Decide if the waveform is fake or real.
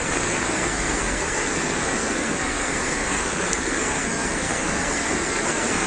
fake